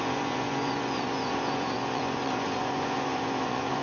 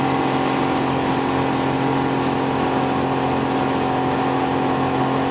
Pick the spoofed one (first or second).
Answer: first